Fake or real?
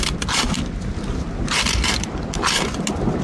real